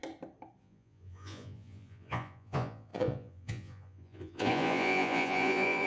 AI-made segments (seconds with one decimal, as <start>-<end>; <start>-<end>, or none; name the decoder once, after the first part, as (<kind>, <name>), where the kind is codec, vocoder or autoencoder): 0.6-5.9 (vocoder, Vocos)